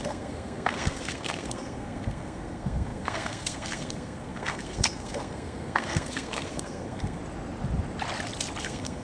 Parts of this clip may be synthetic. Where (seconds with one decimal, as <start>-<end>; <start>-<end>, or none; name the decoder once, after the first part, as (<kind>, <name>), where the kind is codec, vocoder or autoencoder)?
0.0-7.2 (codec, SNAC); 8.6-9.0